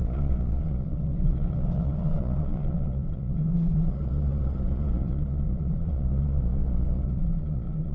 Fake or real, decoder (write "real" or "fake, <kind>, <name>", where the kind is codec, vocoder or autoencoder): fake, vocoder, Vocos